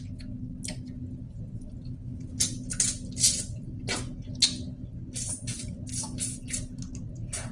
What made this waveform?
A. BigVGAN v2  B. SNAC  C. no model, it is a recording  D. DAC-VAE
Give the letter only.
C